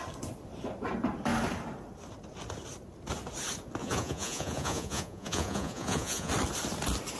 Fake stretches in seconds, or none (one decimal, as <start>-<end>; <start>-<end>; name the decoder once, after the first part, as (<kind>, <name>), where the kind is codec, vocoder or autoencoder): 3.8-6.3 (vocoder, Vocos)